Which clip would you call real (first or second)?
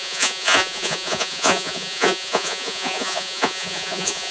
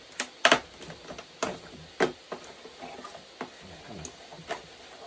second